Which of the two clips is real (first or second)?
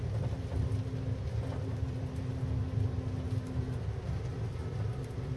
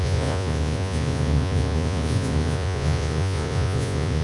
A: first